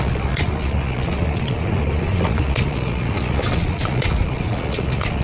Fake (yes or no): yes